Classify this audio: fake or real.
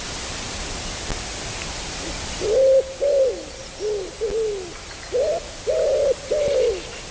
real